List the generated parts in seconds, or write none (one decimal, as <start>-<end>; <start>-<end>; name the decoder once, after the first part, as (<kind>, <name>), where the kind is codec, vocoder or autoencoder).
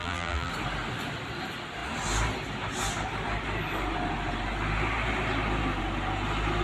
0.0-0.5 (vocoder, BigVGAN v2)